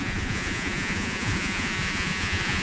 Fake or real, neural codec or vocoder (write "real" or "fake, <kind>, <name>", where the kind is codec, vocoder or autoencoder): fake, vocoder, Vocos